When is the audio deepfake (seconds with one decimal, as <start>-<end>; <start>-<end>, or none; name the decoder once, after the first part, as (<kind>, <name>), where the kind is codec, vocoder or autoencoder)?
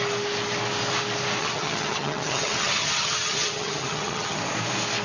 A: 1.4-4.4 (vocoder, HiFi-GAN)